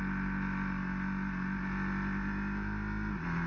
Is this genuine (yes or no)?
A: yes